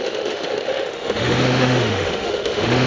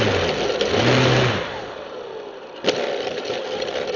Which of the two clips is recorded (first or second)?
second